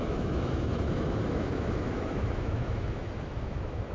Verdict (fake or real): fake